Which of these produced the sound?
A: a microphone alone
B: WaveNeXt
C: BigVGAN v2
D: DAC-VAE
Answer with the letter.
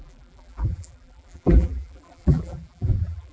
C